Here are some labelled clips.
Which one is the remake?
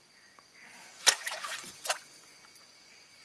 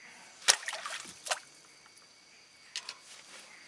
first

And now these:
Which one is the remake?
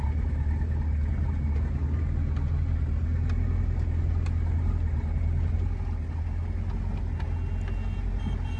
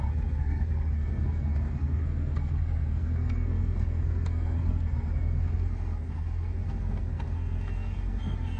second